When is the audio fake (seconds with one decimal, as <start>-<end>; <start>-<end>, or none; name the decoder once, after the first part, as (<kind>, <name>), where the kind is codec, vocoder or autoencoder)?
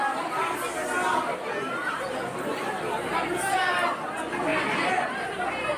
none